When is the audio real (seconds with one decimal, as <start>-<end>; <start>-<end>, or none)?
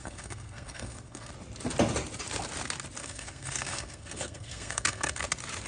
1.3-3.0; 5.2-5.7